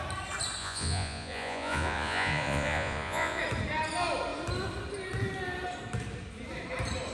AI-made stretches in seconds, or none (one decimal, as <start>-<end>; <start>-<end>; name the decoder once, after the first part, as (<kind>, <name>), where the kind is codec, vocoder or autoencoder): 0.6-3.4 (vocoder, Vocos)